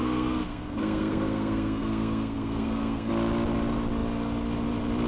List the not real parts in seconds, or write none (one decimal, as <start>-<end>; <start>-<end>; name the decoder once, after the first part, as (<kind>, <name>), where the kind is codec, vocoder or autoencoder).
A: 0.0-3.1 (codec, SNAC)